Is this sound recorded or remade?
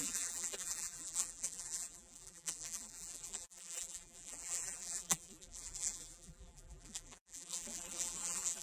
remade